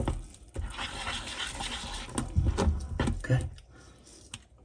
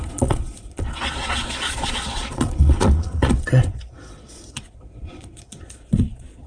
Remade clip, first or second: second